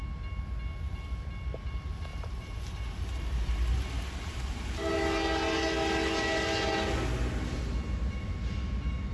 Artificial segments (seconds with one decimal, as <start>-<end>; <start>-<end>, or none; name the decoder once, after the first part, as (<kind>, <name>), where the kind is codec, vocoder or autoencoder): 2.1-4.7 (vocoder, BigVGAN v2)